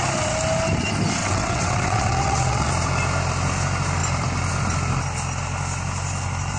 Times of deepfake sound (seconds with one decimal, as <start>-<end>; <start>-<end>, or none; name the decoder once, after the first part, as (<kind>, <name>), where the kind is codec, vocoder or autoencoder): 1.2-2.7 (vocoder, WaveNeXt)